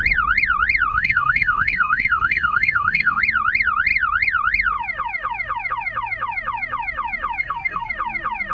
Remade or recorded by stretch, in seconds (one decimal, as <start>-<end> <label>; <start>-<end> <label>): 0.0-0.9 recorded; 0.9-3.2 remade; 3.2-7.4 recorded; 7.4-7.9 remade; 7.9-8.5 recorded